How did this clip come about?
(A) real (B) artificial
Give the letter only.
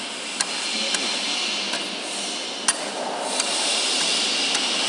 A